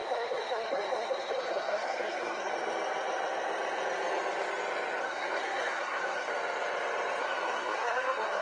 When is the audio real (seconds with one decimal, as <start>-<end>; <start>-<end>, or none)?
2.5-5.0; 6.3-7.2